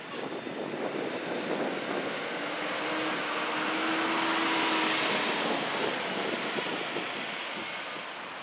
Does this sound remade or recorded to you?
recorded